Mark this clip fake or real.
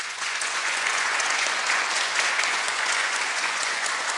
fake